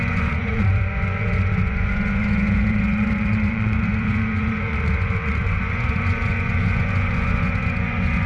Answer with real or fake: fake